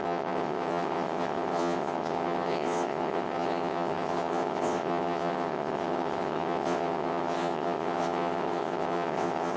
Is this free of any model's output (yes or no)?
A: no